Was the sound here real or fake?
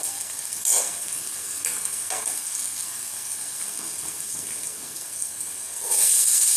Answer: fake